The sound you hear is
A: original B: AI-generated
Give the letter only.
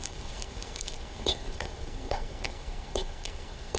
B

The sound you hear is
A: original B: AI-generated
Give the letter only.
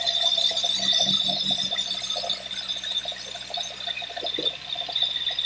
A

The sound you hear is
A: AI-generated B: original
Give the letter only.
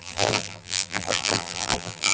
A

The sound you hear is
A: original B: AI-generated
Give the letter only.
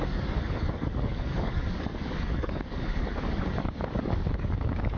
B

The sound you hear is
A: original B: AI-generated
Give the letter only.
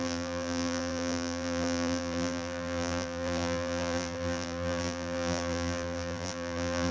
B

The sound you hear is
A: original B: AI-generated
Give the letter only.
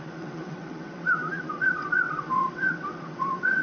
B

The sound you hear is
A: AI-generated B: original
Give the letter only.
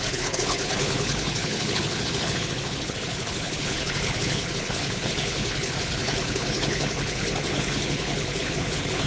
A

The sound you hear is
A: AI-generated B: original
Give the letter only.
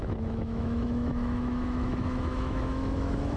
A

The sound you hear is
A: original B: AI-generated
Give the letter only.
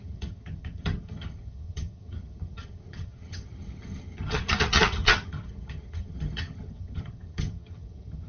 B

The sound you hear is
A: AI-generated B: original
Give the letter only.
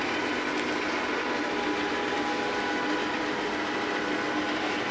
B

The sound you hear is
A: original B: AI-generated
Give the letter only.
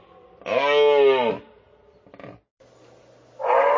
A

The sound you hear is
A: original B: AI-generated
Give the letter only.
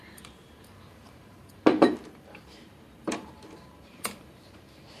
B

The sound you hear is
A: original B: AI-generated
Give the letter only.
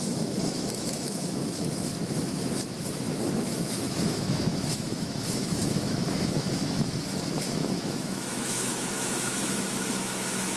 B